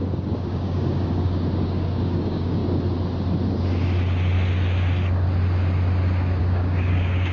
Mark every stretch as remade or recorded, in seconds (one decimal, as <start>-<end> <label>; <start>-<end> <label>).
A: 0.0-2.6 remade; 2.6-6.4 recorded; 6.4-7.3 remade